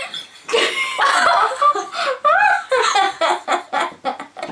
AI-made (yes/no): no